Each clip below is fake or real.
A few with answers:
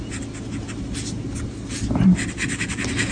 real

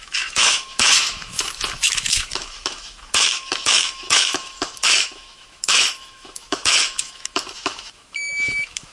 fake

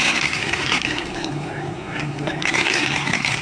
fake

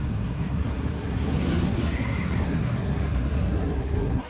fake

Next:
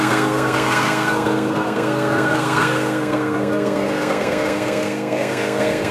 fake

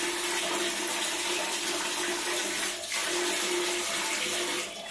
real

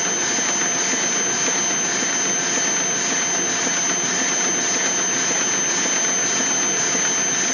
real